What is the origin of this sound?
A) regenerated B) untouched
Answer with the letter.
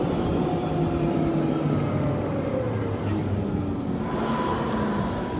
B